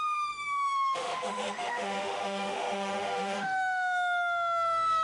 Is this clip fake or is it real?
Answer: fake